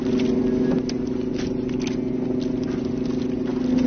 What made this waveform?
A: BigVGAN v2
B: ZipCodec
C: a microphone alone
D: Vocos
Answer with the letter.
C